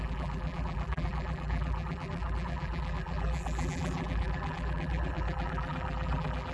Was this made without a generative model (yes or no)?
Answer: no